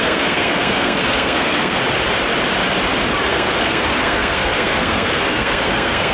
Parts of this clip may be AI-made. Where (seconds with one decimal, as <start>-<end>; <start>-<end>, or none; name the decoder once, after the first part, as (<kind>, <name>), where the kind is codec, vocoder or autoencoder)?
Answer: 0.0-1.8 (codec, SNAC); 3.3-6.1